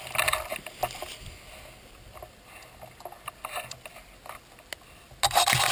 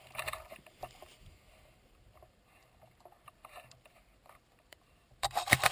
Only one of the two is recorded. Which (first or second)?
first